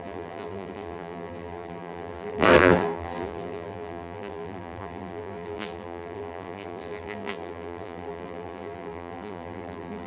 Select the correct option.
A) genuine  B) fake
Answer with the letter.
B